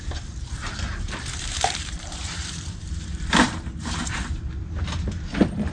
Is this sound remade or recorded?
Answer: remade